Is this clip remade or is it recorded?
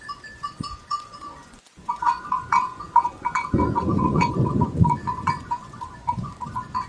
remade